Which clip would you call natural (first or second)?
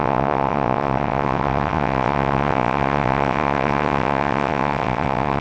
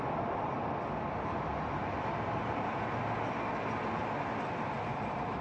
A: second